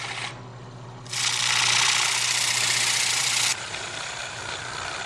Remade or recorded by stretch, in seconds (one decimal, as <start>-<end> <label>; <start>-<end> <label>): 0.0-3.5 recorded; 3.5-4.4 remade; 4.4-5.1 recorded